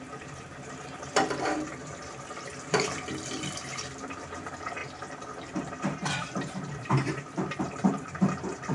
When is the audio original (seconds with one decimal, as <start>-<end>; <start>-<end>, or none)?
4.8-5.7